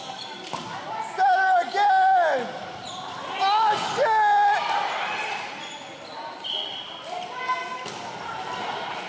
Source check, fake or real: real